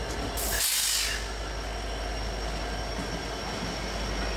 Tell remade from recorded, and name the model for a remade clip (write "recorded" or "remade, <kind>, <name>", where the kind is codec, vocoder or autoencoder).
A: recorded